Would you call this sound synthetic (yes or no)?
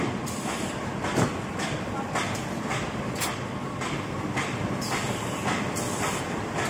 yes